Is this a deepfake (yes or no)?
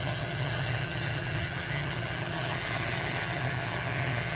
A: yes